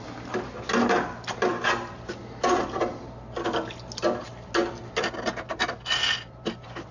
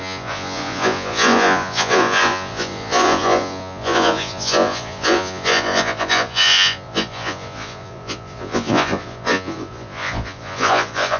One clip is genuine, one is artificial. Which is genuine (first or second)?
first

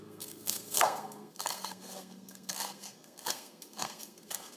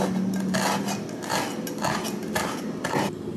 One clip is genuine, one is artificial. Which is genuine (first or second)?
second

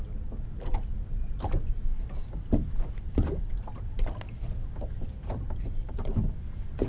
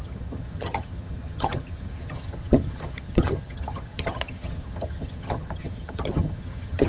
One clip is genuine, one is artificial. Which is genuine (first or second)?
first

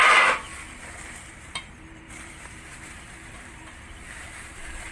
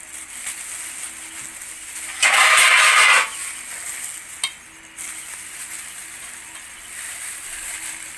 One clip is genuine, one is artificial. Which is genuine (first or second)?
second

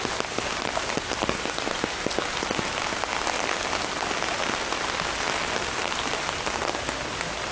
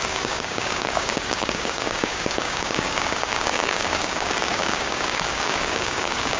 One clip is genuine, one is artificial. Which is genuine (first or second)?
first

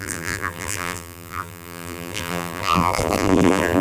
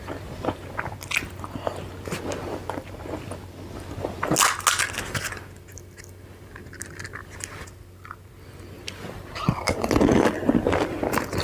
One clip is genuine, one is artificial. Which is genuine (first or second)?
second